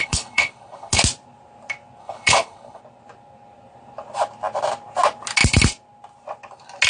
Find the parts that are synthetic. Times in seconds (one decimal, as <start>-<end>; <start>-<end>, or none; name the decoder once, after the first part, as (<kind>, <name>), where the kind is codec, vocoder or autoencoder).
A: 0.0-1.0 (codec, HILCodec); 2.0-2.8